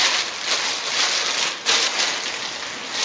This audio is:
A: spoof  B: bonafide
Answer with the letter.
B